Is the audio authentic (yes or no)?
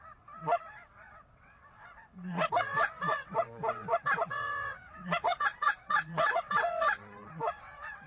no